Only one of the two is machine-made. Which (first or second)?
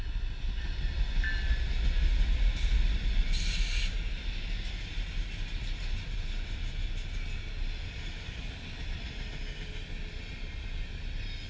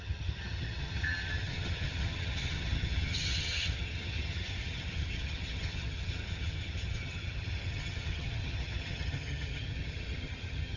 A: second